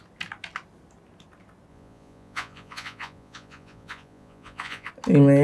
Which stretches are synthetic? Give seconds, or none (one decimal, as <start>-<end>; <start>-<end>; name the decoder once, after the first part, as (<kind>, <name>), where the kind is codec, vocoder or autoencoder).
1.7-4.9 (vocoder, Vocos)